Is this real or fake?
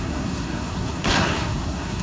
fake